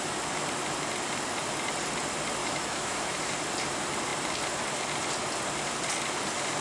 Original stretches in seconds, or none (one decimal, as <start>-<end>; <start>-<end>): 0.0-2.4; 3.2-6.6